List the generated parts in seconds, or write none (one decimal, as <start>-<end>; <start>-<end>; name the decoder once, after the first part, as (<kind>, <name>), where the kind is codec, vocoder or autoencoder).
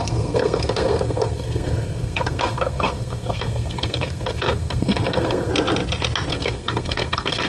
0.0-5.5 (codec, SNAC); 6.3-7.5